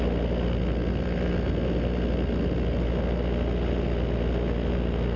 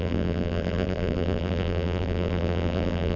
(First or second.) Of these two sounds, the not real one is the second